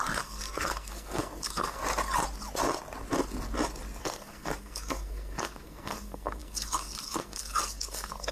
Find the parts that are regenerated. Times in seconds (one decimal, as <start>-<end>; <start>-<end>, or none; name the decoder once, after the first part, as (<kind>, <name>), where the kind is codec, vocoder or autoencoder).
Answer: 0.0-1.8 (codec, SNAC); 4.0-8.3